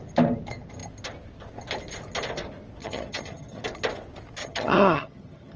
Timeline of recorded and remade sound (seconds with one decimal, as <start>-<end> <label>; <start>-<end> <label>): 0.0-2.8 recorded; 2.8-3.6 remade; 3.6-4.4 recorded; 4.4-5.6 remade